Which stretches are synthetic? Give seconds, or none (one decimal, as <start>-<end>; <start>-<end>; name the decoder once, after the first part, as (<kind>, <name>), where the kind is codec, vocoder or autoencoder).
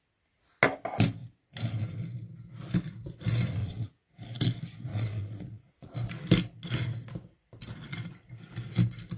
3.6-4.1 (vocoder, Vocos); 4.9-5.9